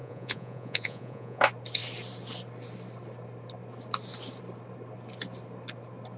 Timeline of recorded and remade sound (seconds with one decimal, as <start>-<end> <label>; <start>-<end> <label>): 0.0-1.4 remade; 1.4-6.2 recorded